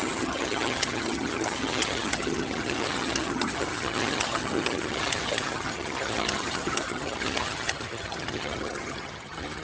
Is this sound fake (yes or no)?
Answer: yes